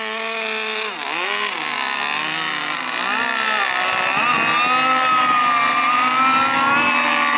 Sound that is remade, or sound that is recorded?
recorded